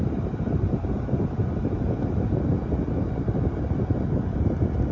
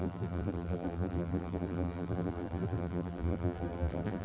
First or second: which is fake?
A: second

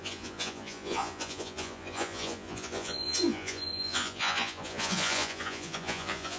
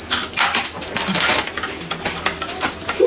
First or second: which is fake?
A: first